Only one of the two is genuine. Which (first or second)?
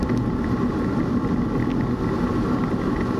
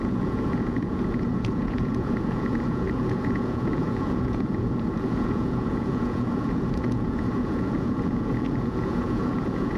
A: first